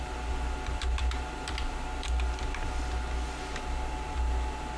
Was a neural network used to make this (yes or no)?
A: no